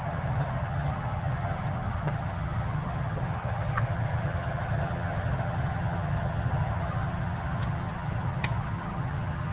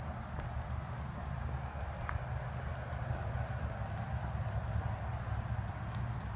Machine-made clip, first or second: first